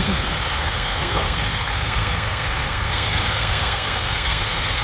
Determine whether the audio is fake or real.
fake